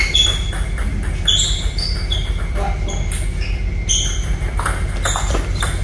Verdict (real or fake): real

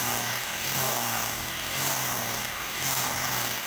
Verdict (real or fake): fake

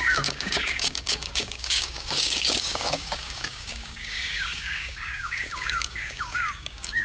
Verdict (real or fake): fake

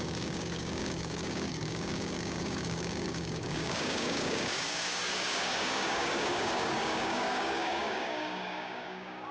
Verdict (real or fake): fake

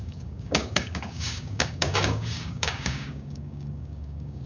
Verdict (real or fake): fake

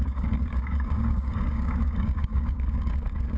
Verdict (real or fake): fake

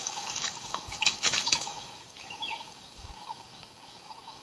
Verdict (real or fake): fake